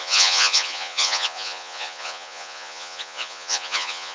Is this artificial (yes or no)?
yes